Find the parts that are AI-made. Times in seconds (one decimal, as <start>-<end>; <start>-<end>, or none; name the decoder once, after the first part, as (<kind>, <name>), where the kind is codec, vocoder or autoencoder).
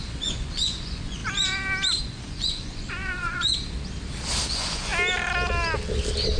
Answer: 0.0-1.2 (vocoder, Vocos); 2.0-3.5; 4.5-4.9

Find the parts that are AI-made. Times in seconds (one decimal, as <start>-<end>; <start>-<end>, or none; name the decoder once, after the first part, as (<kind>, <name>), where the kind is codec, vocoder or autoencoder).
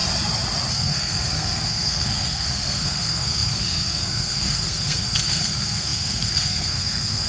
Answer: 0.7-7.3 (codec, SNAC)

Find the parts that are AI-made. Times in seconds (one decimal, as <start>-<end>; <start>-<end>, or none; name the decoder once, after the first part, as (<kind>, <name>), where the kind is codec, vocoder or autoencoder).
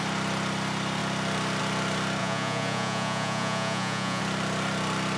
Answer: 2.2-4.2 (vocoder, Vocos)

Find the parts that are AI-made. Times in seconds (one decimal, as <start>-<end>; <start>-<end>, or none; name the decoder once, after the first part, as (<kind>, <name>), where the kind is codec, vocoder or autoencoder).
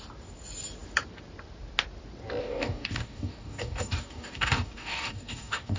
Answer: 2.4-5.8 (codec, DAC)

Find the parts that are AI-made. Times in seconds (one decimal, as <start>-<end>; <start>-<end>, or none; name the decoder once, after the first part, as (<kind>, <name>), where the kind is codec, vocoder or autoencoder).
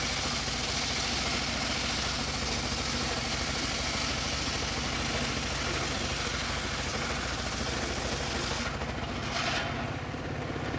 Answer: none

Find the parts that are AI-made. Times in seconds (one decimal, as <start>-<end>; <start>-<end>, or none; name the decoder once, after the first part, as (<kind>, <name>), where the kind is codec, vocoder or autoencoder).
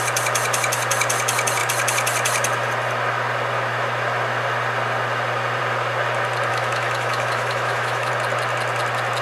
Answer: 6.5-8.1 (autoencoder, DAC-VAE)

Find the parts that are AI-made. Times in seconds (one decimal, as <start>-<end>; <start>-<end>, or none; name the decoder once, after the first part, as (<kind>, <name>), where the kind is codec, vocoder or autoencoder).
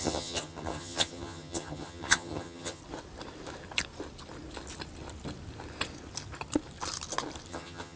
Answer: 0.0-2.8 (vocoder, HiFi-GAN); 7.5-8.0